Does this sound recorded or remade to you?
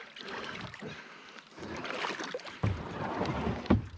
recorded